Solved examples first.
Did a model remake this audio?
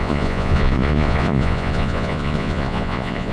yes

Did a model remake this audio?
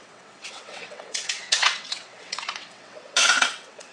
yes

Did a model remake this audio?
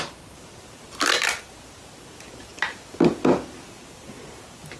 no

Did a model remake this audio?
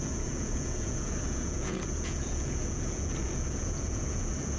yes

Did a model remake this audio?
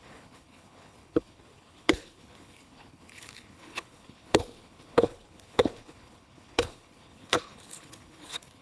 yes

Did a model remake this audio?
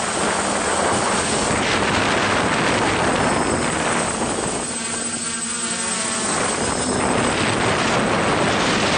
no